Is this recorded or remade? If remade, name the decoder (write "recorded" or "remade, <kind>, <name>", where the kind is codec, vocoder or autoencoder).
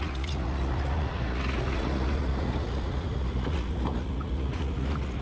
remade, vocoder, Vocos